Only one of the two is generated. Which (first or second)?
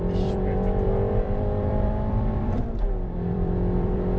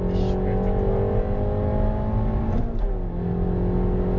first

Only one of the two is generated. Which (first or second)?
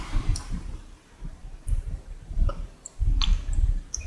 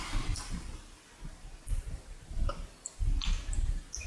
first